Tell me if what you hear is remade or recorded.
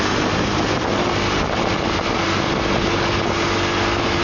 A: recorded